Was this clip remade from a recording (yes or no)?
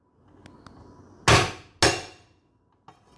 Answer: no